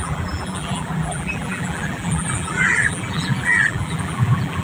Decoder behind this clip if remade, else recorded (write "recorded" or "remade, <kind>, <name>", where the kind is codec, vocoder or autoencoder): remade, vocoder, BigVGAN v2